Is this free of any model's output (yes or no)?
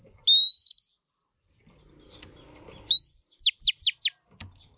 yes